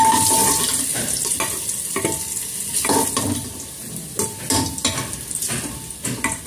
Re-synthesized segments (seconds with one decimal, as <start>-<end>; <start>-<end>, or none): 0.9-2.7